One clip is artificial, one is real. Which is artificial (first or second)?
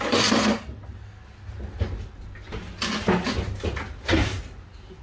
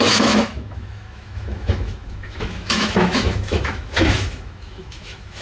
second